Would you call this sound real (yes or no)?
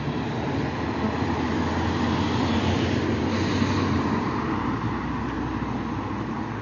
yes